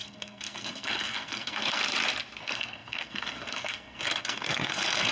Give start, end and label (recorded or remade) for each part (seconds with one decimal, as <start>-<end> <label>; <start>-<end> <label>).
0.0-1.8 remade; 1.8-2.4 recorded; 2.4-5.1 remade